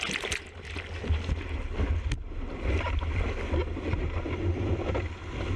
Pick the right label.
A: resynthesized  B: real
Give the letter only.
B